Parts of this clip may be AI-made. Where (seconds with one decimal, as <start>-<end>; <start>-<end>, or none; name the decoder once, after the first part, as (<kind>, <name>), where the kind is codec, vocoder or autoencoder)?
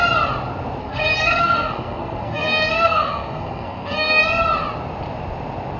0.8-4.2 (codec, SNAC)